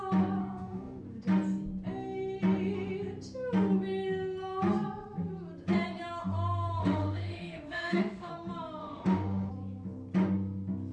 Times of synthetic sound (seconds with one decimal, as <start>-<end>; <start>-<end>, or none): 0.4-1.0; 6.8-8.3; 8.8-9.5